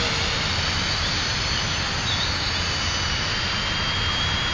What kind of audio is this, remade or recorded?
recorded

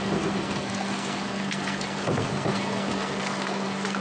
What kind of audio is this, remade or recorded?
remade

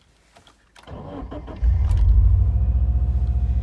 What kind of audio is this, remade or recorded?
recorded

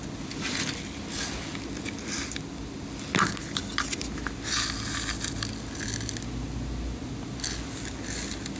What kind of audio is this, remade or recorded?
recorded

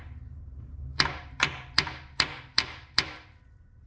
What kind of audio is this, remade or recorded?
remade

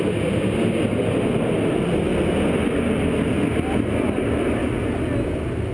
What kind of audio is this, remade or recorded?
recorded